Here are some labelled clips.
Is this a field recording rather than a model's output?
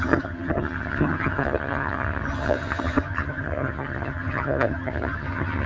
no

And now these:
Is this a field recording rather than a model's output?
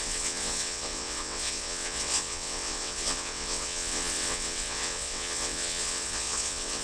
no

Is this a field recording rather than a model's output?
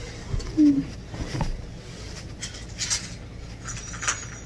yes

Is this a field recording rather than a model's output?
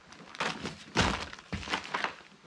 yes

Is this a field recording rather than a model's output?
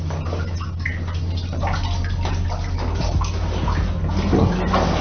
yes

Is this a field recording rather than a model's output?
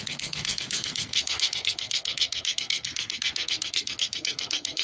no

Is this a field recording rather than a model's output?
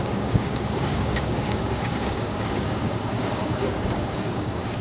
no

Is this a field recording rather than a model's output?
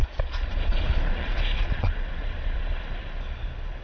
no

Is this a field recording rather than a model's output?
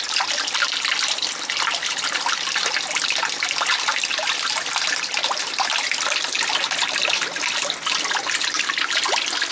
yes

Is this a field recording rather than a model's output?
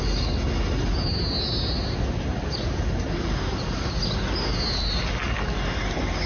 yes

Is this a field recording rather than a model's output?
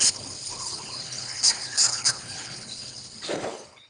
no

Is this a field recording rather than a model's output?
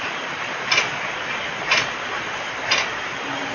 no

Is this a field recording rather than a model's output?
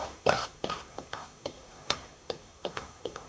no